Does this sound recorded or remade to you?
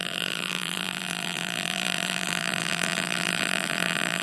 remade